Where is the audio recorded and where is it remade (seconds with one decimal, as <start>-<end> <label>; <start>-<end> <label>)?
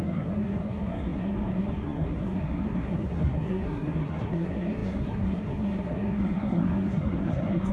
0.0-7.7 remade